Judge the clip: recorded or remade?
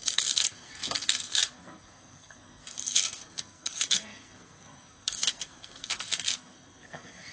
remade